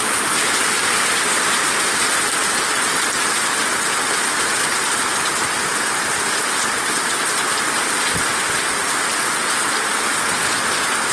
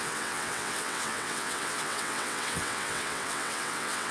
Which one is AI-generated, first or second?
second